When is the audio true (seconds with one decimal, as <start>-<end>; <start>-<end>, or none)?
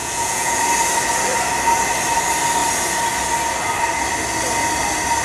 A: 0.6-5.2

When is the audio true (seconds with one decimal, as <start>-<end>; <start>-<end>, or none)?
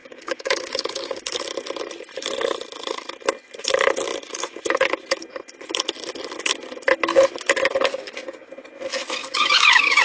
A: 1.4-7.9; 8.5-9.2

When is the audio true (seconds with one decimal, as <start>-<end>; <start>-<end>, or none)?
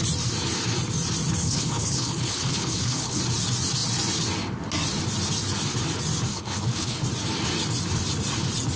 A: 0.0-1.4; 3.2-6.3; 7.0-8.8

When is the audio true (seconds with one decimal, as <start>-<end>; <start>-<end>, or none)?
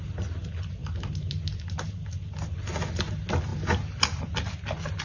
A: 0.0-5.0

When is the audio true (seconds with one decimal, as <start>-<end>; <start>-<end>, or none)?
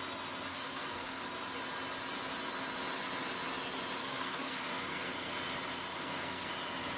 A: 0.0-0.5; 1.2-4.0; 5.3-5.9; 6.5-7.0